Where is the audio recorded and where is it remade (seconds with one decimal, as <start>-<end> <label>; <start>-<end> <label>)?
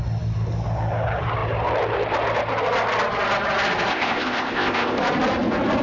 0.0-3.9 recorded; 3.9-5.0 remade; 5.0-5.8 recorded